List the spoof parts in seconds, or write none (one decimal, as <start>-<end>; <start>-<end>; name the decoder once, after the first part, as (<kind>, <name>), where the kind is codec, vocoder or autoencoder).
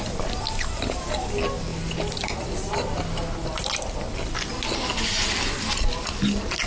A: none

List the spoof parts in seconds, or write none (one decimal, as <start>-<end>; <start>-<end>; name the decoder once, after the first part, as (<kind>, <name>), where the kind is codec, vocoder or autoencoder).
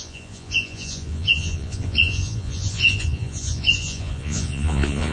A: 0.0-5.1 (vocoder, Vocos)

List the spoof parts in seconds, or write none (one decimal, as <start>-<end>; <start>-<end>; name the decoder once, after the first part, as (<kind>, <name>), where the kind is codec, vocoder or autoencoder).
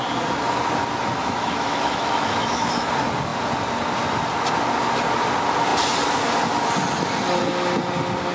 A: 1.2-2.9 (autoencoder, DAC-VAE)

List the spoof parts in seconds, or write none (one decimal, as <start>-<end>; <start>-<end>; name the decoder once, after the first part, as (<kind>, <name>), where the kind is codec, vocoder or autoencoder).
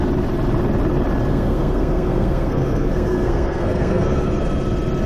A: 1.3-4.4 (codec, SNAC)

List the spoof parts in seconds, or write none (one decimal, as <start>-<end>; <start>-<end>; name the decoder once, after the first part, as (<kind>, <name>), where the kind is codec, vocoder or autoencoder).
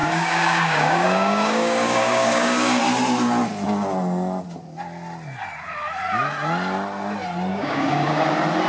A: 0.0-2.8 (codec, DAC); 7.5-8.2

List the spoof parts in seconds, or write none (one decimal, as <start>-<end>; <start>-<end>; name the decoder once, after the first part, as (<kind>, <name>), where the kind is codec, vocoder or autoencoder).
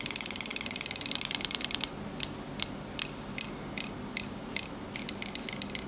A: none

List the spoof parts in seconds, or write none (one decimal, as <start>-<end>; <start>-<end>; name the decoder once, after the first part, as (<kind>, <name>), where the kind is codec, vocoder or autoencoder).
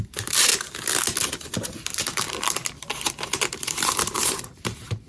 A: 0.0-0.5 (vocoder, BigVGAN v2); 1.7-2.6; 3.5-5.1